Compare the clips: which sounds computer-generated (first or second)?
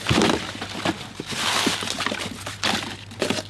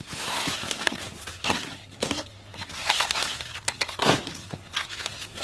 second